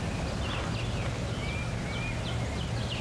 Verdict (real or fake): real